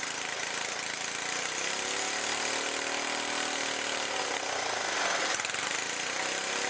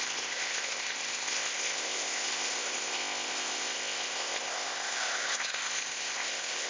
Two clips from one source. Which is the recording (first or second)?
first